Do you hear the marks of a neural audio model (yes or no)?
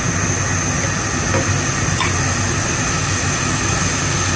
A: no